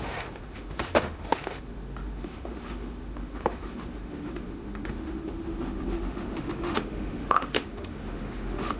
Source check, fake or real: fake